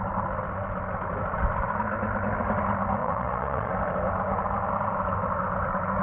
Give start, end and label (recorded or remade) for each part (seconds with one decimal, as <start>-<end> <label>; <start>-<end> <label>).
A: 0.0-3.0 recorded; 3.0-3.7 remade; 3.7-6.0 recorded